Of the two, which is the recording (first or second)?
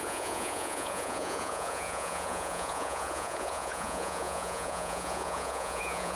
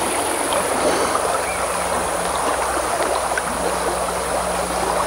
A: second